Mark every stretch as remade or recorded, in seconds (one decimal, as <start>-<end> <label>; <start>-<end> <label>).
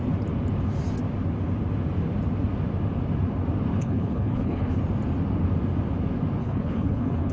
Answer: 0.0-3.7 recorded; 3.7-4.8 remade; 4.8-6.4 recorded; 6.4-7.3 remade